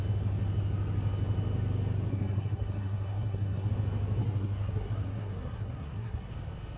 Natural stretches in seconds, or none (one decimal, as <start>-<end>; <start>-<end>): 0.0-2.1; 3.7-4.2; 6.3-6.8